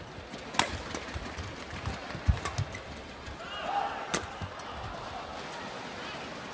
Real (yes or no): yes